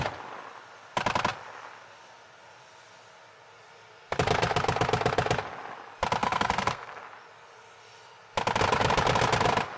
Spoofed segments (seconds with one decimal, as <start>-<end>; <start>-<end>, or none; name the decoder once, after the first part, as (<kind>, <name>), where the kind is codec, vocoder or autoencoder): 6.2-7.0 (codec, SNAC)